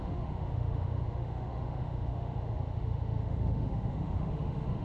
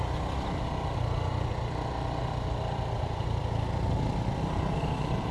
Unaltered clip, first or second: second